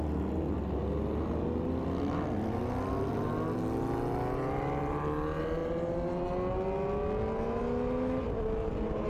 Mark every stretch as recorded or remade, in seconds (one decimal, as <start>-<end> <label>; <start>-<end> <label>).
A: 0.0-9.1 recorded